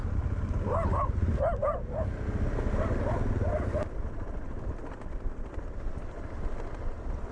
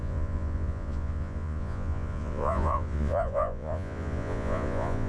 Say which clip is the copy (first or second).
second